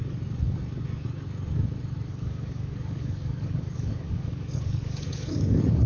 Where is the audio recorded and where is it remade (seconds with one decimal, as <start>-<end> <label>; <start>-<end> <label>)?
0.0-2.1 recorded; 2.1-5.9 remade